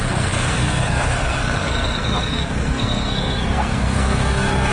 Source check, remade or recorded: remade